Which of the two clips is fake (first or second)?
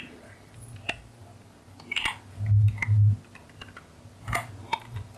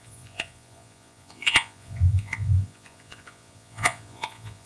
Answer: second